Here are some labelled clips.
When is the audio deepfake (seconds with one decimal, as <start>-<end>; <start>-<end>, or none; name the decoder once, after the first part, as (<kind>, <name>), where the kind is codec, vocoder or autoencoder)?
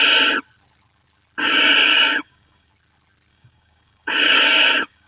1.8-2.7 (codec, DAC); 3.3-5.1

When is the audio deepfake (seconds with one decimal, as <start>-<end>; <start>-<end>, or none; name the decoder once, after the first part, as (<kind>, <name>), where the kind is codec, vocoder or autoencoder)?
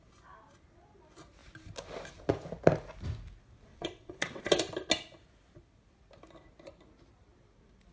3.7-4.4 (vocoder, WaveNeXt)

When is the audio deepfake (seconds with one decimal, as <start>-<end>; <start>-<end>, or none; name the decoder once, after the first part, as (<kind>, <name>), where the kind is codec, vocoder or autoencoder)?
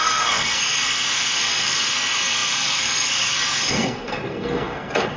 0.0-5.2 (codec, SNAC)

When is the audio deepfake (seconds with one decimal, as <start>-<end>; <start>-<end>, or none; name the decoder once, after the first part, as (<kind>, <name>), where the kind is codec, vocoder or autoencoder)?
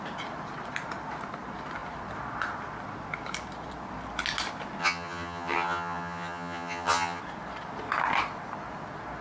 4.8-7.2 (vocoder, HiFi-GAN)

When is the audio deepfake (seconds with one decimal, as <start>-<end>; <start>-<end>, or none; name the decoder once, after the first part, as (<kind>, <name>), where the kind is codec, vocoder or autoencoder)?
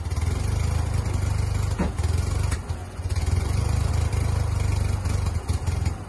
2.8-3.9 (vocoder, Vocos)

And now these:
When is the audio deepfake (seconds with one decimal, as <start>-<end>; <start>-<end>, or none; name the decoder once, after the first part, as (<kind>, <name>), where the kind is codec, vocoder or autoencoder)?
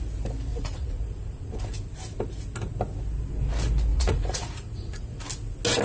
0.5-1.5 (vocoder, Vocos); 3.9-5.2